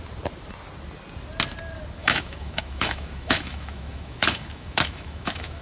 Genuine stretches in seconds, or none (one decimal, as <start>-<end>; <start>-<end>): 0.0-2.0